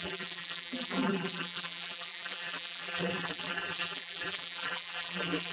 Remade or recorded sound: remade